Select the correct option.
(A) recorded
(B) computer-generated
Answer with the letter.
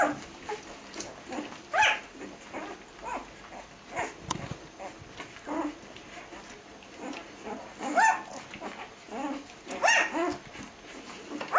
A